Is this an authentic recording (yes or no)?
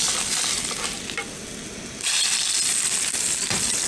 yes